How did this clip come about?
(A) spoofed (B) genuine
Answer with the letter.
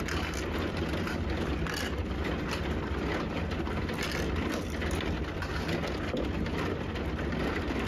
B